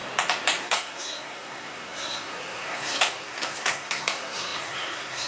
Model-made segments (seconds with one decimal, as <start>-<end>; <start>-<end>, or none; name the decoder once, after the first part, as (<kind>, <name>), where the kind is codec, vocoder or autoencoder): 0.6-5.3 (codec, SNAC)